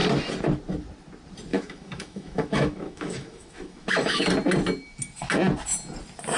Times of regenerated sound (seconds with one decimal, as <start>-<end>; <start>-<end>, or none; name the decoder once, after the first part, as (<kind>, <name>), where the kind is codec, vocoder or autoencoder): 1.5-4.3 (autoencoder, DAC-VAE)